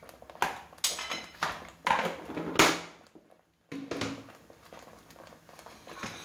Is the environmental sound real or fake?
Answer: real